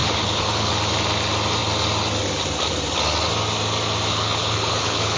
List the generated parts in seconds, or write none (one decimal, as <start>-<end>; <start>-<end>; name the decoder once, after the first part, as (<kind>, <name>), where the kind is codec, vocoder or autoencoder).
0.0-0.7 (codec, HILCodec); 4.1-5.2